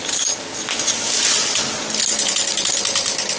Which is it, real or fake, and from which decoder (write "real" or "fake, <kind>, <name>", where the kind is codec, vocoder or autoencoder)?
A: real